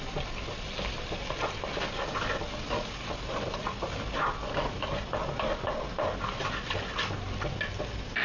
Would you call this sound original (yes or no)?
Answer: yes